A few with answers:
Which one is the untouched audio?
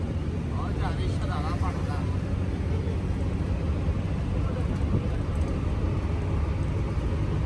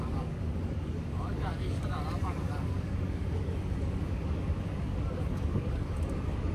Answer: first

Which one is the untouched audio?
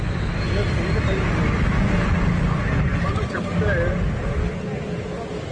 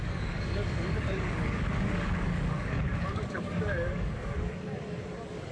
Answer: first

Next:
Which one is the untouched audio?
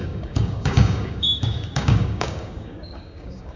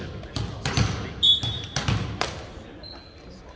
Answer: second